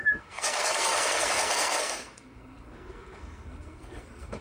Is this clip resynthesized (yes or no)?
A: yes